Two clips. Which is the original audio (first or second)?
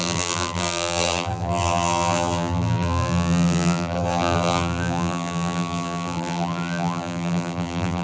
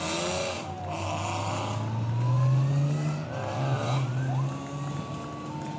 second